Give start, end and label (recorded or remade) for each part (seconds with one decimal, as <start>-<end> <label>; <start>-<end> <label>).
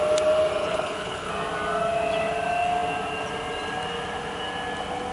0.0-0.6 recorded; 0.6-1.3 remade; 1.3-5.1 recorded